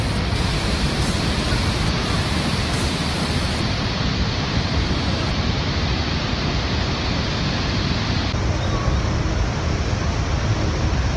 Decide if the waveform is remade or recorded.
recorded